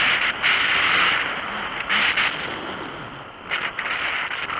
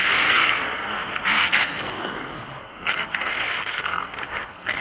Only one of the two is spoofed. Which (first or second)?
second